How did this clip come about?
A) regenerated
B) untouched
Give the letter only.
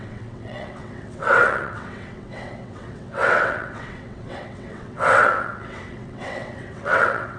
A